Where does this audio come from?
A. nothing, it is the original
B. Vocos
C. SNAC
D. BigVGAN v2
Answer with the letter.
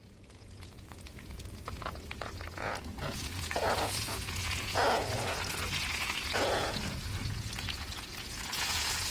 B